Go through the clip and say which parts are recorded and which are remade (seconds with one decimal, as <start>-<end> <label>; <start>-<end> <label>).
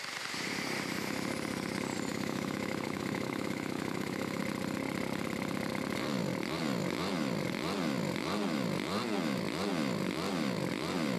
0.0-2.1 recorded; 2.1-4.4 remade; 4.4-11.2 recorded